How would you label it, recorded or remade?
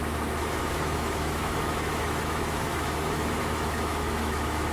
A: remade